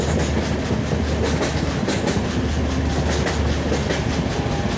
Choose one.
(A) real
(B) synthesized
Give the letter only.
A